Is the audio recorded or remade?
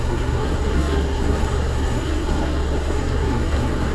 remade